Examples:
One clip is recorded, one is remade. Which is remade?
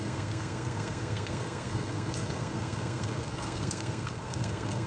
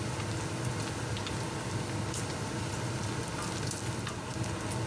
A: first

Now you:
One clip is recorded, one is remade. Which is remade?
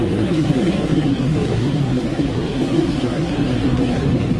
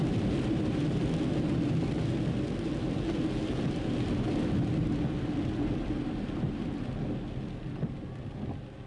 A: first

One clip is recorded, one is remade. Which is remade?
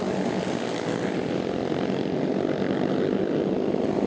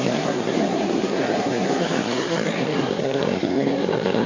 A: second